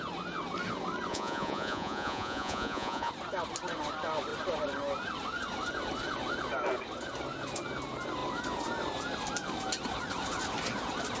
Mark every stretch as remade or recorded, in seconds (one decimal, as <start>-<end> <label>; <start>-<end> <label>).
0.0-1.1 recorded; 1.1-3.1 remade; 3.1-11.2 recorded